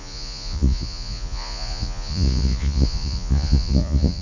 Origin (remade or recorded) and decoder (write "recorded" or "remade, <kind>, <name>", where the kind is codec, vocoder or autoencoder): remade, vocoder, Vocos